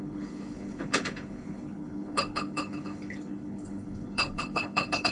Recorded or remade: remade